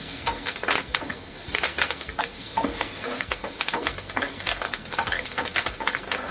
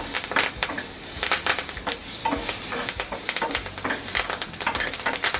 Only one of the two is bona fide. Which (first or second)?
second